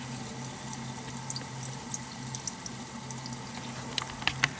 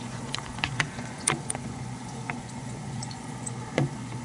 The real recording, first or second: first